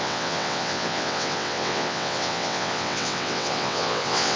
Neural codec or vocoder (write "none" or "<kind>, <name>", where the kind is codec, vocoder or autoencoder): vocoder, WaveNeXt